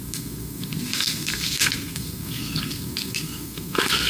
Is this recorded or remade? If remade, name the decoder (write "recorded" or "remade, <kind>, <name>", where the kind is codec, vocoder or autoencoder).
remade, codec, SNAC